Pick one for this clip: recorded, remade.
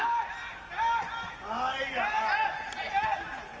recorded